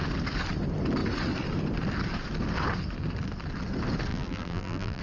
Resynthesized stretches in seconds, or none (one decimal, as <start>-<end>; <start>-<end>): 4.1-5.0